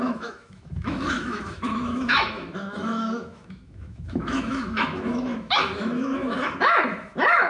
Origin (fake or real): fake